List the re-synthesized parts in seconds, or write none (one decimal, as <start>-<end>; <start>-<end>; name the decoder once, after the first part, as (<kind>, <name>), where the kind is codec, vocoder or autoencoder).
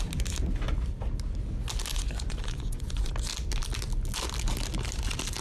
1.9-3.1 (vocoder, Vocos)